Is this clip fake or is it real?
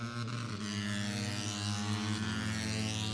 real